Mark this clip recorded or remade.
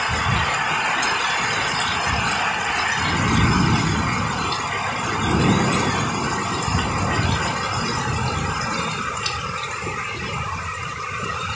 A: recorded